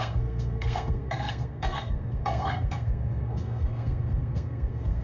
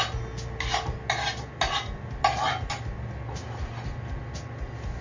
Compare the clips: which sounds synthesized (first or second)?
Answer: first